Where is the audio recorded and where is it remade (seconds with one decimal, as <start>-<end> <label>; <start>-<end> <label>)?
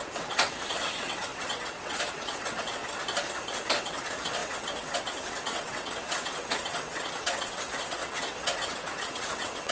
0.0-2.8 remade; 2.8-3.8 recorded; 3.8-9.7 remade